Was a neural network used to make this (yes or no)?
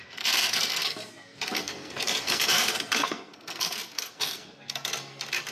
yes